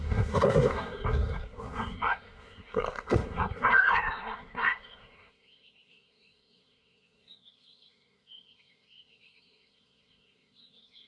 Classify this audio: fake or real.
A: fake